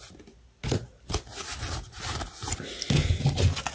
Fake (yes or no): no